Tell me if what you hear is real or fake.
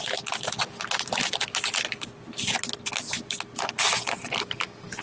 real